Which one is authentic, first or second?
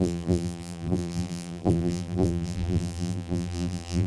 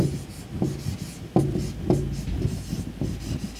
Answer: second